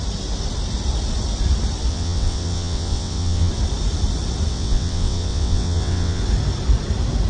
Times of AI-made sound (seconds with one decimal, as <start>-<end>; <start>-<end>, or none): 1.9-3.5; 4.5-6.2